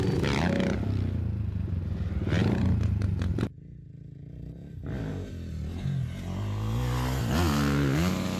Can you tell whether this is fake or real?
real